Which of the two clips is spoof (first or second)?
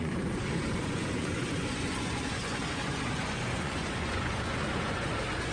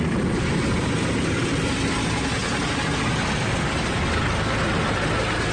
first